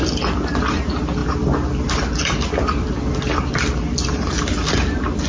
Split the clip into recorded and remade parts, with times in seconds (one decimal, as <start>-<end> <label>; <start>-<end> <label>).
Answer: 0.0-5.3 recorded